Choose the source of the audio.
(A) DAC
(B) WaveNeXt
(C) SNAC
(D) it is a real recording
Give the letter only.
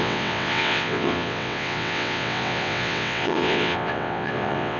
B